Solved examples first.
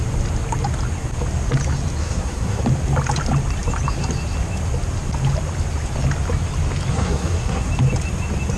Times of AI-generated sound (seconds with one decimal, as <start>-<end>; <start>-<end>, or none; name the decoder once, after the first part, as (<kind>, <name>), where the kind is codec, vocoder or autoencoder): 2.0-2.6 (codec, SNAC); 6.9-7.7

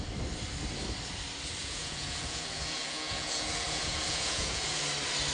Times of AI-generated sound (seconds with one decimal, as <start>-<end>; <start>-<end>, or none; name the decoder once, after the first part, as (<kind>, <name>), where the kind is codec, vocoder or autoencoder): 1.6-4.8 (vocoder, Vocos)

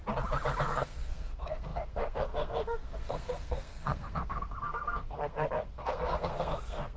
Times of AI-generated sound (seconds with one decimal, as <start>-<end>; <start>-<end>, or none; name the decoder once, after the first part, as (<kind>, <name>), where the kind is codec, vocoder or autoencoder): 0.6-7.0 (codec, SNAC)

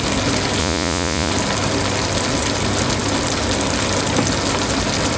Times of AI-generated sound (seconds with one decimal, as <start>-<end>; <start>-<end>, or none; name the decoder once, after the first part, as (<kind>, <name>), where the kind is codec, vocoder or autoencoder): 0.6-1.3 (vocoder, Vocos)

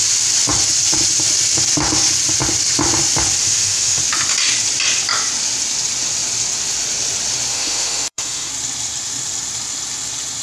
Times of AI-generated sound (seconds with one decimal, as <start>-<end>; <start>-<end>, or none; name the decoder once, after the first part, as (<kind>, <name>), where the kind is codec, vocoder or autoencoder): 3.4-4.0 (autoencoder, DAC-VAE); 7.5-8.5

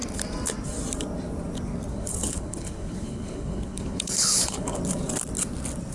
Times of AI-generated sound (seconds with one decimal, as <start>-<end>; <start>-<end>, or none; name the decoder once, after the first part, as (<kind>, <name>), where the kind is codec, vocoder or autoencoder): 1.9-4.8 (codec, HILCodec)

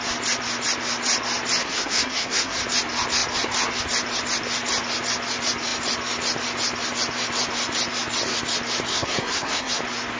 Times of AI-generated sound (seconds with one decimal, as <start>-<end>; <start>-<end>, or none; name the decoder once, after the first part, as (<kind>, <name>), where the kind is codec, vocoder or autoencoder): 1.6-2.6 (codec, SNAC); 8.9-9.7